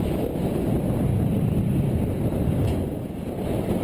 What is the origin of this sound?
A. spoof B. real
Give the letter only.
B